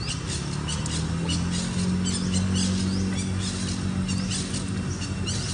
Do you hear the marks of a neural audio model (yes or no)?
no